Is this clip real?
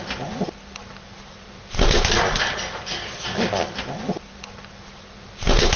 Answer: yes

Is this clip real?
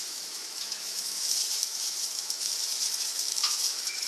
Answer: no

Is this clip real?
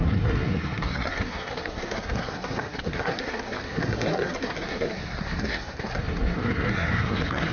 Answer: no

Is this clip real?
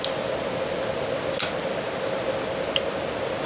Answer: yes